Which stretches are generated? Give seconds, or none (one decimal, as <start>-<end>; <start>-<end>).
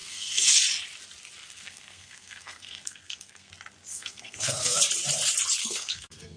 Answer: 0.0-0.6; 1.4-3.5; 3.9-4.8; 5.6-6.4